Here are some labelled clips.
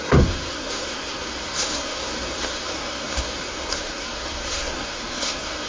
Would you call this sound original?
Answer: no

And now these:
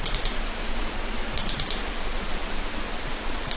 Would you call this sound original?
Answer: no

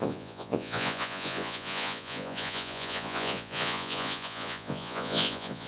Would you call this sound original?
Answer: no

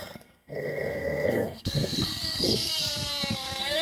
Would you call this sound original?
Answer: no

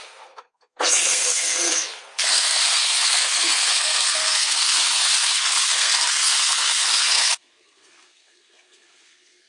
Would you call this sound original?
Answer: no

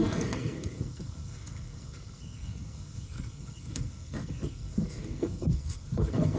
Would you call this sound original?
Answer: no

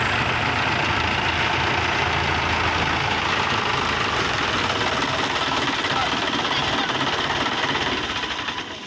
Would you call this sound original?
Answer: yes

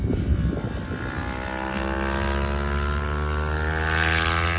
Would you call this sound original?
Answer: yes